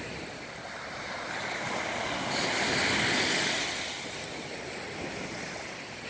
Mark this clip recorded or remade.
remade